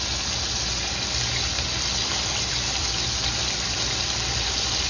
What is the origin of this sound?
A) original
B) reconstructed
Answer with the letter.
A